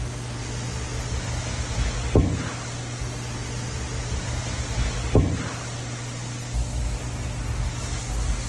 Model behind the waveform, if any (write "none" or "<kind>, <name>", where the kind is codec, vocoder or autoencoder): none